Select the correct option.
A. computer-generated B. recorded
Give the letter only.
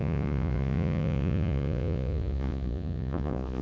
A